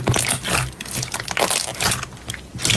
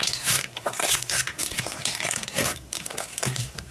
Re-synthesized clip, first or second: second